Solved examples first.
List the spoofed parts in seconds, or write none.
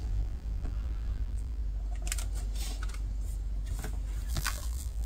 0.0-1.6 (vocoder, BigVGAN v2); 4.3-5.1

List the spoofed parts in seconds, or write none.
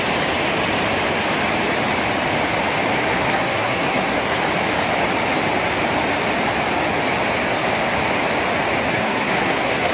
3.1-4.4 (codec, SNAC); 8.9-9.9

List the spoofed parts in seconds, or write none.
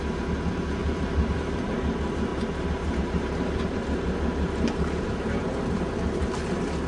0.8-1.7 (vocoder, BigVGAN v2); 2.3-6.4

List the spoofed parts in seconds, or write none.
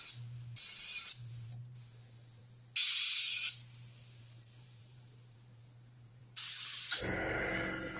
0.0-2.4 (vocoder, BigVGAN v2); 4.2-6.2